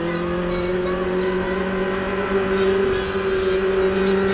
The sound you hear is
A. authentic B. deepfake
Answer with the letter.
A